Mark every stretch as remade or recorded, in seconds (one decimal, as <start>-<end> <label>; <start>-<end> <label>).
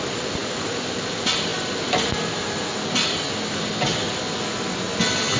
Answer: 0.0-5.4 recorded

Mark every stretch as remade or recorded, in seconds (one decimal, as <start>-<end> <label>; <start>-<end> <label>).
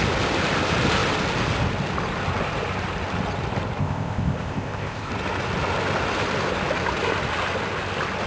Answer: 0.0-3.8 recorded; 3.8-5.1 remade; 5.1-8.3 recorded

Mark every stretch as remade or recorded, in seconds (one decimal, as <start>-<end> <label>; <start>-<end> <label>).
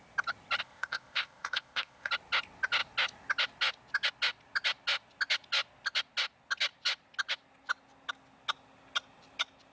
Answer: 0.0-0.6 recorded; 0.6-2.1 remade; 2.1-9.7 recorded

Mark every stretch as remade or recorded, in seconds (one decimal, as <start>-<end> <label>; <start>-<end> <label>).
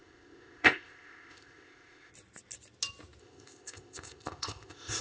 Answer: 0.0-2.1 remade; 2.1-3.2 recorded; 3.2-5.0 remade